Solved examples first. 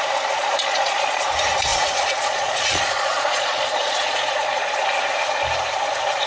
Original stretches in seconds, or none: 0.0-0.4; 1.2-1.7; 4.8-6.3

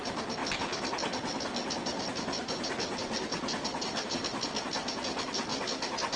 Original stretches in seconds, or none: 0.0-6.2

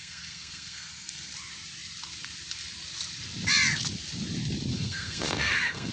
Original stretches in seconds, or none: 1.3-4.7